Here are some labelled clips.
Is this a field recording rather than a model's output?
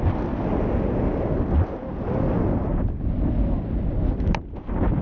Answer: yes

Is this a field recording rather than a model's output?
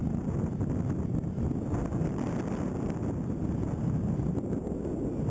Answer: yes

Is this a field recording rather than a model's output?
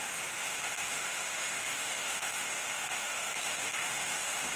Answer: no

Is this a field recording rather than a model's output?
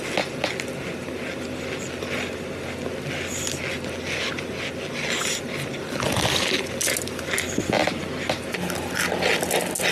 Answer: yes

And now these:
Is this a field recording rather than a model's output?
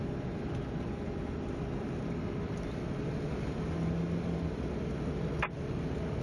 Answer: yes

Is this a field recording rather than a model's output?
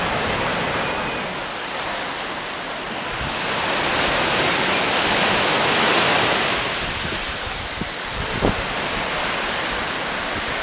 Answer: yes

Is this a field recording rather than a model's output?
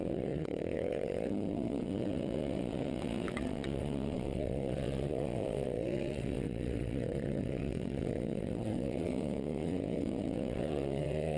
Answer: no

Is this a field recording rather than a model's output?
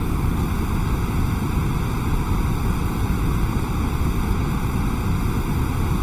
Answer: yes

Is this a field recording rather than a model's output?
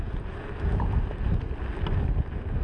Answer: yes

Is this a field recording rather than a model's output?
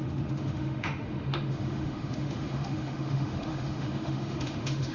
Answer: no